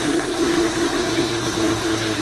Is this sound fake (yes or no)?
yes